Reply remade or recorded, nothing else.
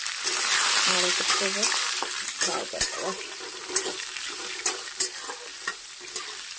remade